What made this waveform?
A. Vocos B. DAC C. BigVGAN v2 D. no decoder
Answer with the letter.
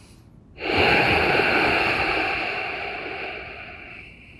D